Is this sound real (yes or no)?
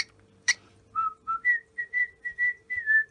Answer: no